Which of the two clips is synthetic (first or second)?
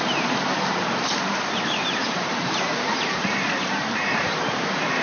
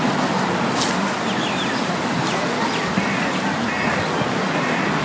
first